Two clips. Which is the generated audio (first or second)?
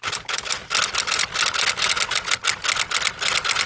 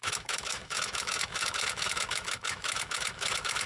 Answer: second